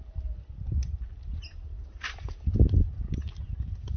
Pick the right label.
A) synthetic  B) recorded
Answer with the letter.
B